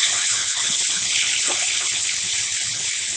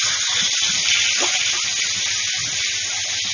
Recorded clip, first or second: second